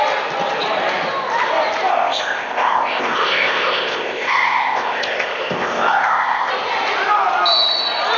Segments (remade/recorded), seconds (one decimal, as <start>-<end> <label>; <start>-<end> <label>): 0.0-1.9 recorded; 1.9-6.5 remade; 6.5-8.2 recorded